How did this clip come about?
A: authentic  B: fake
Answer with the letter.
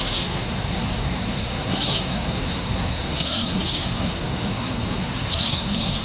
B